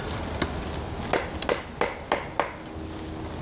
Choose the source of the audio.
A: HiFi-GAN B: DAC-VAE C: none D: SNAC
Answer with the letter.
C